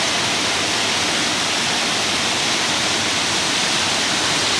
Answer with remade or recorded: recorded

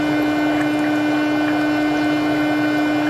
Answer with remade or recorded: recorded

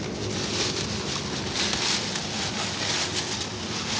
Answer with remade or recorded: recorded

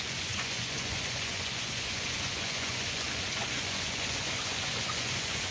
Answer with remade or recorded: remade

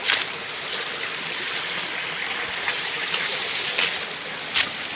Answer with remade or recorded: recorded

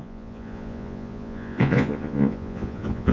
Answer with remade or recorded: remade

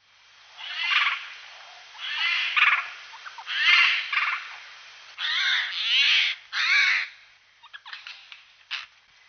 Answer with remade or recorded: recorded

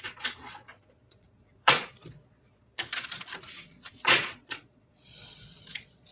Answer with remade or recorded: remade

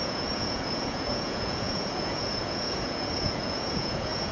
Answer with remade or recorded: remade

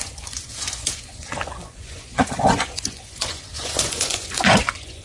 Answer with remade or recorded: remade